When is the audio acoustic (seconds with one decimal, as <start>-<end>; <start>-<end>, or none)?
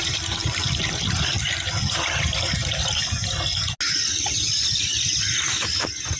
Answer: 0.0-0.4; 3.0-6.2